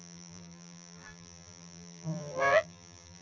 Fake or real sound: fake